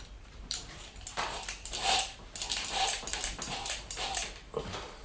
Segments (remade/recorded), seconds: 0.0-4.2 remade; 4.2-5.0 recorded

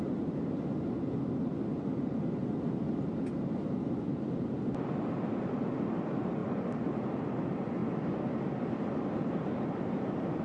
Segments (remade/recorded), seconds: 0.0-10.4 recorded

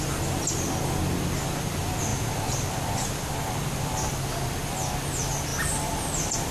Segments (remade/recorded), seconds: 0.0-2.1 recorded; 2.1-4.2 remade; 4.2-5.5 recorded; 5.5-6.5 remade

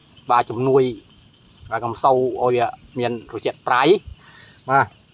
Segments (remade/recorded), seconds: 0.0-2.5 remade; 2.5-4.1 recorded; 4.1-5.1 remade

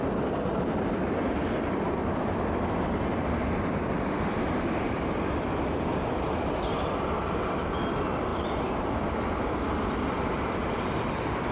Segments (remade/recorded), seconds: 0.0-2.0 remade; 2.0-3.3 recorded; 3.3-11.5 remade

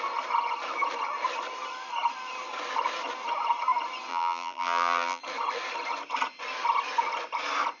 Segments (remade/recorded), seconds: 0.0-4.1 recorded; 4.1-5.2 remade; 5.2-7.8 recorded